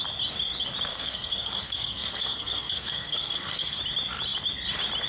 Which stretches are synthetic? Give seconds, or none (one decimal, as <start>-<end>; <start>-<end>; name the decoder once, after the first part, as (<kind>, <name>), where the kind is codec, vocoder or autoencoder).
0.9-3.8 (codec, SNAC)